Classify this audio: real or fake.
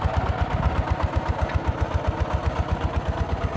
real